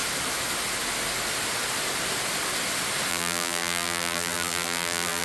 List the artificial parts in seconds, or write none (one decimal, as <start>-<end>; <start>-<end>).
3.1-5.2